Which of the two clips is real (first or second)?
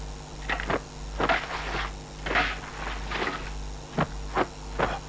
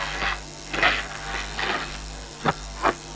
first